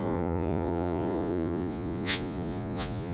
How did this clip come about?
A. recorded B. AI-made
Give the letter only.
B